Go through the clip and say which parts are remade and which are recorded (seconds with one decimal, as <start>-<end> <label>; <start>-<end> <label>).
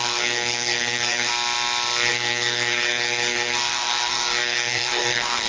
0.0-1.3 remade; 1.3-2.1 recorded; 2.1-5.5 remade